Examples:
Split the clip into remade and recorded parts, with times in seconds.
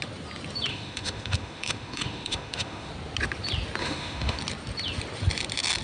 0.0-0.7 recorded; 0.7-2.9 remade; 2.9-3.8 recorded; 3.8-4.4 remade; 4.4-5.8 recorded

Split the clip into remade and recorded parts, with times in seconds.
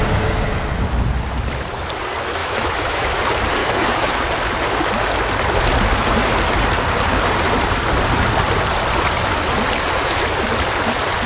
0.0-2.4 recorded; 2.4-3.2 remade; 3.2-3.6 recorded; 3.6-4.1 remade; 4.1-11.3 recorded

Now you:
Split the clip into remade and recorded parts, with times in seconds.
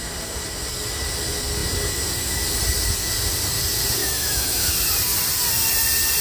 0.0-4.0 recorded; 4.0-4.7 remade; 4.7-6.2 recorded